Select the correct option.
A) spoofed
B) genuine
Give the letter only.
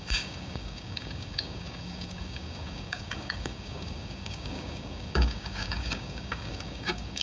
A